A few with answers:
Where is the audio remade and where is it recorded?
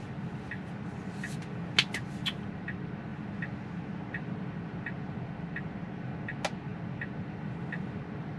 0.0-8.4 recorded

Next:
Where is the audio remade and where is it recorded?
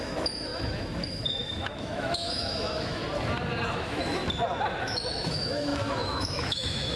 0.0-0.5 remade; 0.5-1.1 recorded; 1.1-3.0 remade; 3.0-3.7 recorded; 3.7-4.2 remade; 4.2-4.8 recorded; 4.8-7.0 remade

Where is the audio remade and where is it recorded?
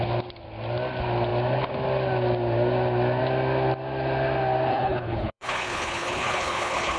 0.0-4.7 recorded; 4.7-7.0 remade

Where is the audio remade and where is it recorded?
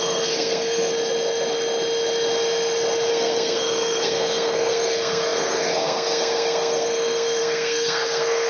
0.0-0.9 remade; 0.9-3.1 recorded; 3.1-8.5 remade